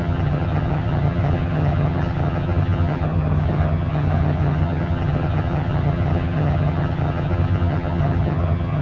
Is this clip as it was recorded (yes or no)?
no